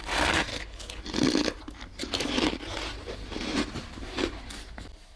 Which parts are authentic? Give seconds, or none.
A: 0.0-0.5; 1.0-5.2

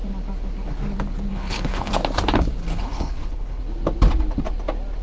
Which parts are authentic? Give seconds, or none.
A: 0.0-1.3; 1.9-2.6; 3.6-5.0